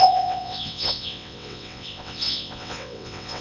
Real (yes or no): no